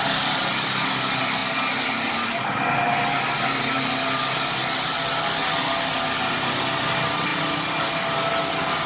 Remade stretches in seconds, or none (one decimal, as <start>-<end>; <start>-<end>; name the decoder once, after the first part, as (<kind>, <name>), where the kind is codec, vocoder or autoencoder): none

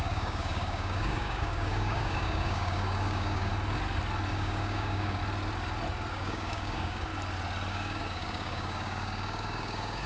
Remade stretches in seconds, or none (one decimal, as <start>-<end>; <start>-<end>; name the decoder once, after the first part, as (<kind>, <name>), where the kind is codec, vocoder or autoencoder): 0.0-3.5 (codec, DAC); 4.3-5.2; 6.1-7.1; 7.7-10.1

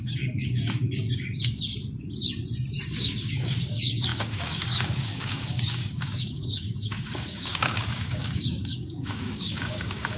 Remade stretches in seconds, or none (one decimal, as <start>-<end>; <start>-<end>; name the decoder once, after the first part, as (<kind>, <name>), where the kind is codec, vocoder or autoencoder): 0.0-1.7 (codec, DAC); 2.9-10.2

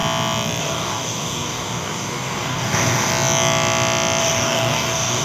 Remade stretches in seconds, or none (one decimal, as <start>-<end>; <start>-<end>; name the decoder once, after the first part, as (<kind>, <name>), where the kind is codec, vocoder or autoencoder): 0.6-3.1 (codec, DAC); 4.2-5.2

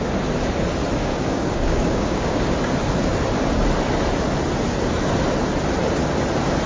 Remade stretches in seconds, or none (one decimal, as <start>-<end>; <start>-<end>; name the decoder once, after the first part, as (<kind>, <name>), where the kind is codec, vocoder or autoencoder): 1.0-2.4 (codec, DAC)

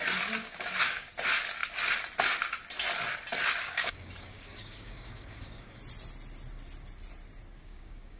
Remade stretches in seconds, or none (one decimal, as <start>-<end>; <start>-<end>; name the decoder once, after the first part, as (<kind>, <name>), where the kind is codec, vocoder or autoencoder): 0.4-1.1 (codec, DAC); 3.6-5.8; 7.6-8.2

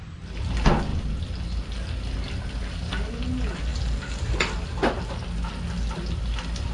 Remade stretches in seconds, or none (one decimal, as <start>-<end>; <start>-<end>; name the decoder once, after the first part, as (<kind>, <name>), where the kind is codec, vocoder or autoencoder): none

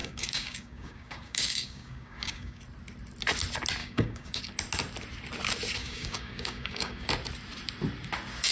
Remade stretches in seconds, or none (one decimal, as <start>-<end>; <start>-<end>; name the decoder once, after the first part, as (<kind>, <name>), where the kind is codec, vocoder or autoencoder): 0.0-2.6 (codec, DAC); 3.8-4.4; 5.8-7.1